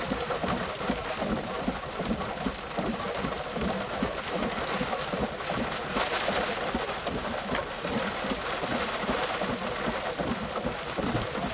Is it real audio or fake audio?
real